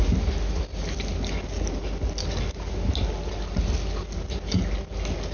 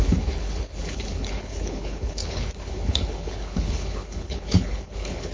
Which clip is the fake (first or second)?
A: second